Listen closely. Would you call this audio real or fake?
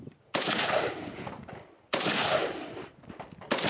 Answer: fake